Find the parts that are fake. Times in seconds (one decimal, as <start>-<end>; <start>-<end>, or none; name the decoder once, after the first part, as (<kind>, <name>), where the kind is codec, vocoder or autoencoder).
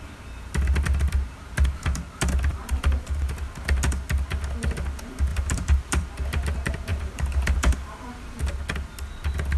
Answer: 2.5-3.2 (vocoder, BigVGAN v2); 5.3-6.0; 6.9-8.4